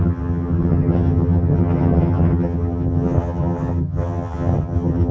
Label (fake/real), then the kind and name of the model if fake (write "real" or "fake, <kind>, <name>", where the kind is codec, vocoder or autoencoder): fake, vocoder, HiFi-GAN